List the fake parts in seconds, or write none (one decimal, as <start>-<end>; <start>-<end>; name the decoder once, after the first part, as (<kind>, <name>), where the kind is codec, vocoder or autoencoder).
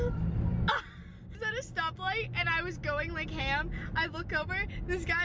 none